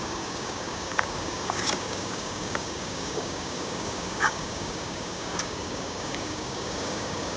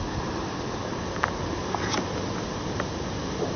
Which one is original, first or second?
second